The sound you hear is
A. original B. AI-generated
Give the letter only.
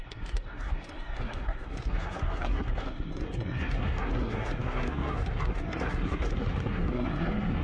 B